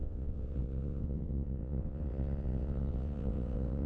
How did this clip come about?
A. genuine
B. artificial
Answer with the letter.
B